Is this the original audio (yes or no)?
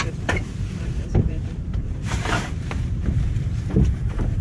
no